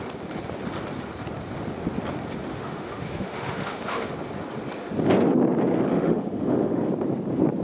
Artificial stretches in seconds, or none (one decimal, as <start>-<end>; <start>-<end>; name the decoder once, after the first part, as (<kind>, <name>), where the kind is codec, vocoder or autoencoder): 2.5-4.1 (autoencoder, DAC-VAE); 5.9-6.9